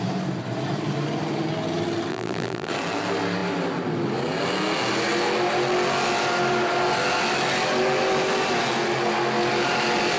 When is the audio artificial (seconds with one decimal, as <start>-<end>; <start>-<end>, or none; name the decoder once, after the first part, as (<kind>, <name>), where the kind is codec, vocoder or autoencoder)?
2.1-2.7 (vocoder, BigVGAN v2)